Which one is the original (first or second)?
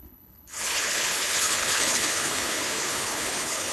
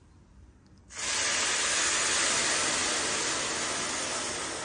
second